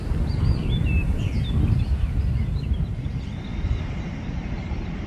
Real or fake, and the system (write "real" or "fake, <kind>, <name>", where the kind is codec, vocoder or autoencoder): real